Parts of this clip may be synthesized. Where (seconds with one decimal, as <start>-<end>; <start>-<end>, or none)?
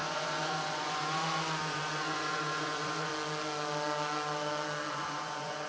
0.0-3.1; 4.9-5.7